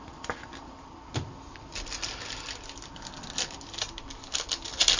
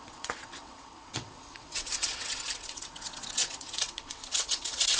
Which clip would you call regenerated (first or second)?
second